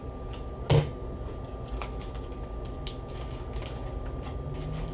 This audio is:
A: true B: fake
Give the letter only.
A